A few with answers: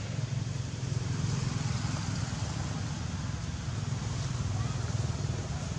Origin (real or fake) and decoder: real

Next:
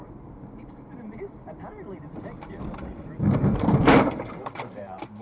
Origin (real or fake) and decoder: fake, vocoder, BigVGAN v2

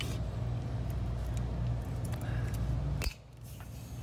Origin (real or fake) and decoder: real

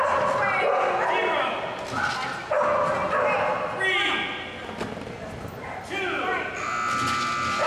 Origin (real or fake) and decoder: real